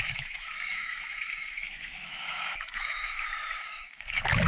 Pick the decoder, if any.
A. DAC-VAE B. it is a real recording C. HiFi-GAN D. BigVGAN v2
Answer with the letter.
A